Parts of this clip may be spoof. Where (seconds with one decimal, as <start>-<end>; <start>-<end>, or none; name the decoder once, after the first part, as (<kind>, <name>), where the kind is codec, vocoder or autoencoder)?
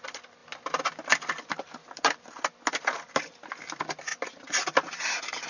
1.8-2.4 (vocoder, BigVGAN v2)